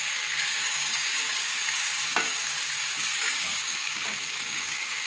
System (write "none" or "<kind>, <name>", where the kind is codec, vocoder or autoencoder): codec, DAC